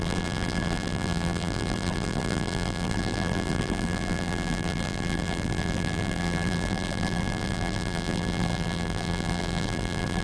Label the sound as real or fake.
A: fake